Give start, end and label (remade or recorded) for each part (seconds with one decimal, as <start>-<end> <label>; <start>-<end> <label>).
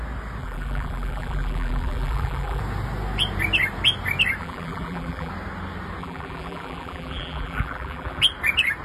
0.0-0.4 recorded; 0.4-2.6 remade; 2.6-4.4 recorded; 4.4-5.3 remade; 5.3-6.0 recorded; 6.0-8.2 remade; 8.2-8.8 recorded